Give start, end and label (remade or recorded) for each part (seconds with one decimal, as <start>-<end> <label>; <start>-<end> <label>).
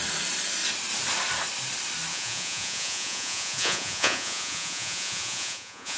0.0-2.1 recorded; 2.1-6.0 remade